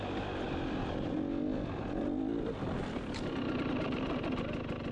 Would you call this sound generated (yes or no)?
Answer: no